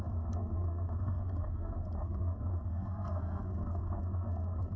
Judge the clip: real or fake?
fake